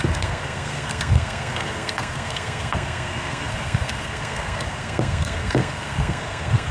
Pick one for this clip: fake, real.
fake